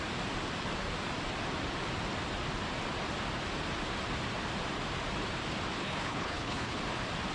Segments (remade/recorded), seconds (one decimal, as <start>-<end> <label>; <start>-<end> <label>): 0.0-5.8 recorded; 5.8-6.8 remade; 6.8-7.3 recorded